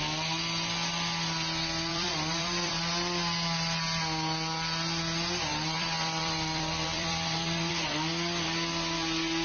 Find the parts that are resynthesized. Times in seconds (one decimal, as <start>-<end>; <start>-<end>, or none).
1.9-2.7; 5.5-7.7